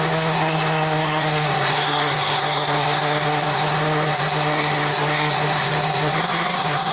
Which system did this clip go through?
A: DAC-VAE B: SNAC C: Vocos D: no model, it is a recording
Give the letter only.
B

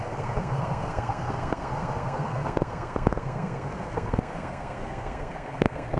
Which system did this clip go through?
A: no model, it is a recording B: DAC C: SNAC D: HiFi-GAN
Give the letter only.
C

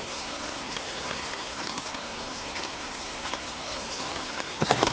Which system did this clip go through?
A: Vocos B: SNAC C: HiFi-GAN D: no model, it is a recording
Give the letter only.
B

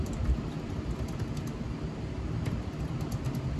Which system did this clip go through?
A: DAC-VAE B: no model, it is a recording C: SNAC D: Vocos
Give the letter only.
B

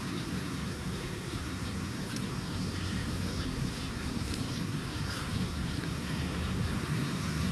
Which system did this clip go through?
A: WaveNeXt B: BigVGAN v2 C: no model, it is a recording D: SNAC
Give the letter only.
D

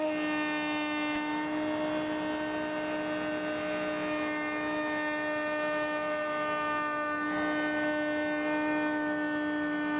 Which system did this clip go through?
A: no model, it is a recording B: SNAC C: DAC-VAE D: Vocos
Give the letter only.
A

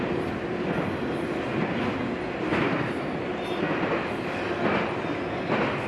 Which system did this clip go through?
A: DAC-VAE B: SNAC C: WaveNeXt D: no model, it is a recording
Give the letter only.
D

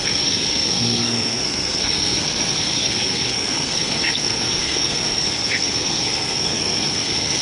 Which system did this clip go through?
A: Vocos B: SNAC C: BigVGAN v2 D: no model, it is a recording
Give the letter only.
B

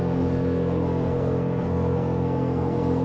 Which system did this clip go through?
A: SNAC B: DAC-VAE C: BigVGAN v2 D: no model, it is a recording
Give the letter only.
A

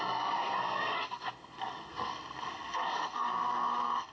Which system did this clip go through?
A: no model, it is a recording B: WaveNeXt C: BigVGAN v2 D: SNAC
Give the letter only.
D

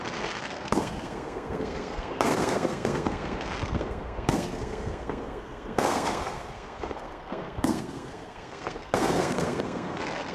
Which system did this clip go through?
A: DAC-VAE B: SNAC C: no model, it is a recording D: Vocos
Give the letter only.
B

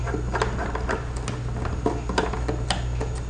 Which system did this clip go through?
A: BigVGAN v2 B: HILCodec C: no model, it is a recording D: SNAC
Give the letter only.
C